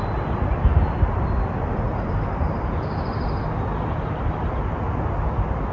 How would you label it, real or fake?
real